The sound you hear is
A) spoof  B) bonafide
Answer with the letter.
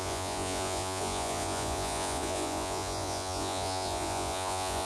A